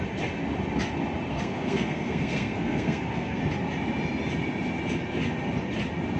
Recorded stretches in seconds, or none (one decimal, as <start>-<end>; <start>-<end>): 0.0-1.3; 3.4-6.2